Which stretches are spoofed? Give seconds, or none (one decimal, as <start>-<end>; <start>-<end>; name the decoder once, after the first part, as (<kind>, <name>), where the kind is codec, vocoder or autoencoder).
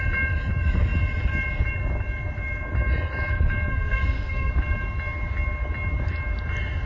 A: 3.7-4.5 (codec, SNAC)